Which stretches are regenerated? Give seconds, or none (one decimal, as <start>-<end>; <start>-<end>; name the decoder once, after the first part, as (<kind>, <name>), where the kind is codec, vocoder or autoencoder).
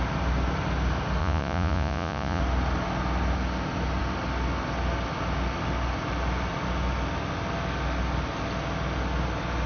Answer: 1.2-2.4 (vocoder, Vocos)